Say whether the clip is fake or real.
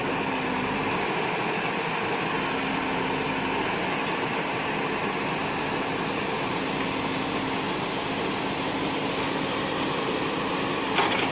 real